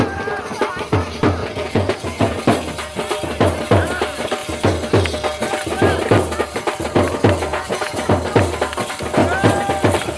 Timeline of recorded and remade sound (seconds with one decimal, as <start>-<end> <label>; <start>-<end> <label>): 0.0-1.4 recorded; 1.4-2.3 remade; 2.3-7.5 recorded; 7.5-8.1 remade; 8.1-10.2 recorded